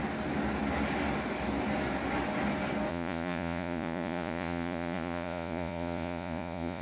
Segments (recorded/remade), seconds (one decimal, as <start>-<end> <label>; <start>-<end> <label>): 0.0-2.9 recorded; 2.9-6.8 remade